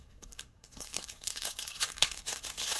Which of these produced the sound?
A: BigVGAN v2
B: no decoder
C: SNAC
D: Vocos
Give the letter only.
C